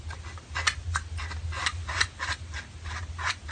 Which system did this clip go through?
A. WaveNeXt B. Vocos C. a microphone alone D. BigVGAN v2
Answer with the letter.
C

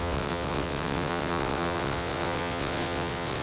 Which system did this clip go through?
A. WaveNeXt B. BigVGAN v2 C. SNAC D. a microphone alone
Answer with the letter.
A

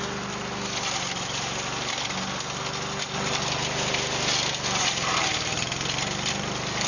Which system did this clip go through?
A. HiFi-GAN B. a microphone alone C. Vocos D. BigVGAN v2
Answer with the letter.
B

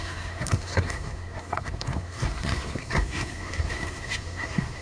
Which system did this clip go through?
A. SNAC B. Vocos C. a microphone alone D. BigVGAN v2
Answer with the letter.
A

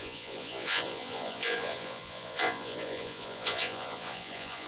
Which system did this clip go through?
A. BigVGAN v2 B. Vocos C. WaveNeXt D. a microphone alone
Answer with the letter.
B